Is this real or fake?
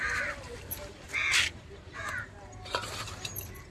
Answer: fake